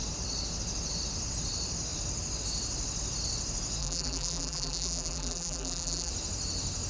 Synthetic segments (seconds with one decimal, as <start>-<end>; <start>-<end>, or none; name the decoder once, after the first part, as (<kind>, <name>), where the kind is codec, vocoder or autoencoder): 3.8-6.1 (vocoder, BigVGAN v2)